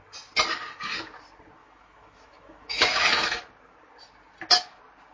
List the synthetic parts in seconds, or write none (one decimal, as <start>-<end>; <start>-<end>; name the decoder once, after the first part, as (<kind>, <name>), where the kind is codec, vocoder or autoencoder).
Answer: 1.6-3.4 (autoencoder, DAC-VAE)